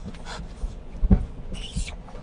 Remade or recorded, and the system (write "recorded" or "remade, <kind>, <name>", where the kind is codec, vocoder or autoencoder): remade, vocoder, Vocos